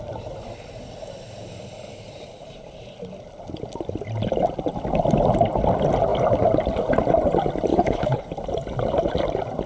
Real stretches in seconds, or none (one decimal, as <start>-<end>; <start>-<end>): 0.0-7.7; 8.3-9.7